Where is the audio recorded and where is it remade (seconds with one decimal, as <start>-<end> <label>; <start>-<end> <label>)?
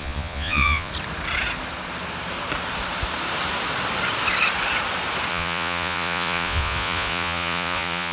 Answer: 0.0-0.9 remade; 0.9-5.3 recorded; 5.3-8.1 remade